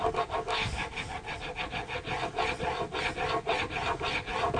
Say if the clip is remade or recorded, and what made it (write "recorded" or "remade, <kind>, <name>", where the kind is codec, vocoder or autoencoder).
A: recorded